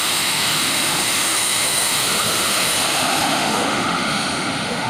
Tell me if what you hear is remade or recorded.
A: remade